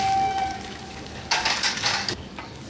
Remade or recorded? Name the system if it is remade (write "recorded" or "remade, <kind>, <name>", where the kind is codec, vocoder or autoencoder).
remade, codec, DAC